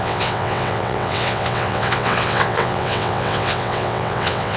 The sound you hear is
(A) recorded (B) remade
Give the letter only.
B